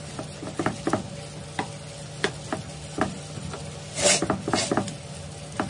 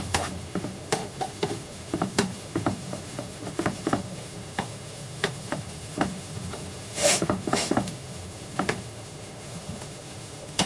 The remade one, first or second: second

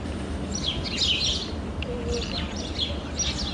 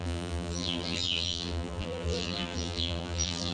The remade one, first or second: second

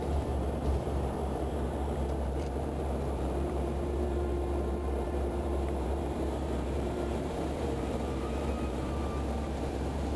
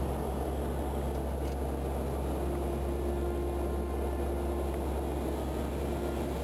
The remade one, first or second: first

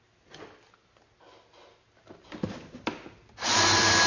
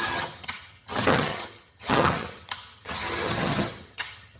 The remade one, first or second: second